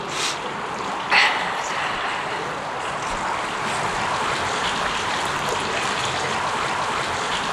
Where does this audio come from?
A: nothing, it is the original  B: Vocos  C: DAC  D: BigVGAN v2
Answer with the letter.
A